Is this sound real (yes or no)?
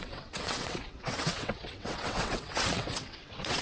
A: no